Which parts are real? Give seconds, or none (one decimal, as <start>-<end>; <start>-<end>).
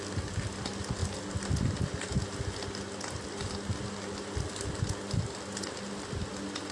0.0-6.7